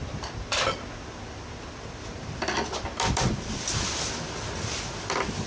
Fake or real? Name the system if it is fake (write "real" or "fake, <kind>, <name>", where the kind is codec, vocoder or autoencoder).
real